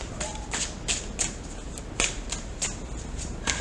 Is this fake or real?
real